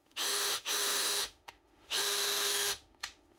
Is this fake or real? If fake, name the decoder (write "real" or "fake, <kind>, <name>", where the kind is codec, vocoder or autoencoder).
fake, autoencoder, DAC-VAE